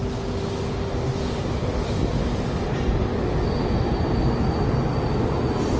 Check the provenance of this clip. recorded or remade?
recorded